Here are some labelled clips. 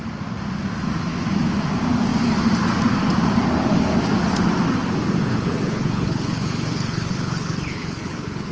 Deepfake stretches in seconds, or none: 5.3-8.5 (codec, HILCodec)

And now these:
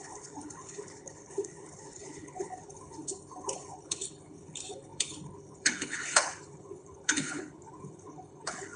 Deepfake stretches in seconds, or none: 0.0-8.8 (codec, HILCodec)

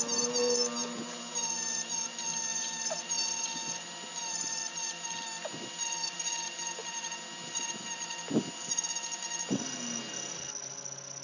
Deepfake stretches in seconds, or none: none

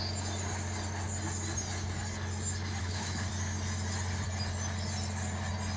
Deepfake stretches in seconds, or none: 2.8-3.3 (codec, HILCodec)

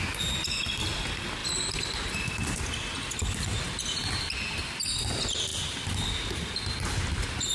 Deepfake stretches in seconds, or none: none

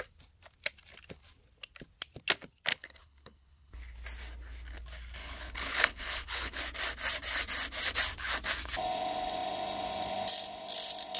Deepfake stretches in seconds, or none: 2.7-3.8 (codec, HILCodec); 5.2-6.6

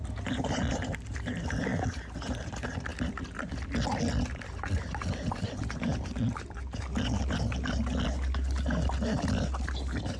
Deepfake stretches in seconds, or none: none